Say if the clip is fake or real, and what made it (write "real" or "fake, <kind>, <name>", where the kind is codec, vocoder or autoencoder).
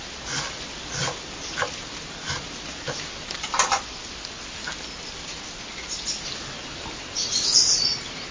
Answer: real